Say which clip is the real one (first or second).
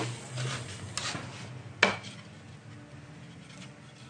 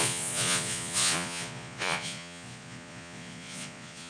first